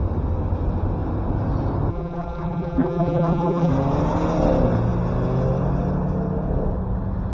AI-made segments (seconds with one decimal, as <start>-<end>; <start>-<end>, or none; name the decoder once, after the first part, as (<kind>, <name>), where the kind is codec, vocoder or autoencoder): 1.9-3.7 (vocoder, BigVGAN v2)